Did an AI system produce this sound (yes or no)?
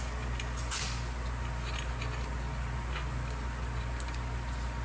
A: no